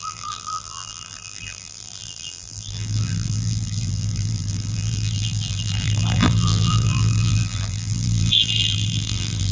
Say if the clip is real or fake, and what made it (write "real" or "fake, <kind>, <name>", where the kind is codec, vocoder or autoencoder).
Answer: fake, vocoder, BigVGAN v2